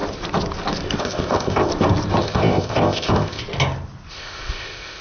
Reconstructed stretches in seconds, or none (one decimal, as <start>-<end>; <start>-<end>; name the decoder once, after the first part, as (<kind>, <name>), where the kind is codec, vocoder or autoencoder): 1.0-1.7 (codec, ZipCodec); 2.2-3.4; 4.1-5.0